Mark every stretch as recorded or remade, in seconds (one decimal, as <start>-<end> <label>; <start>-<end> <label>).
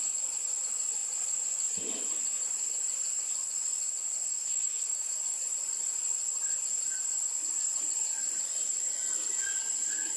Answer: 0.0-4.3 recorded; 4.3-5.2 remade; 5.2-10.2 recorded